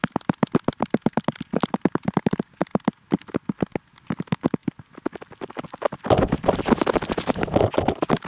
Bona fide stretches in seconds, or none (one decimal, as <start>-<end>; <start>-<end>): 0.0-8.3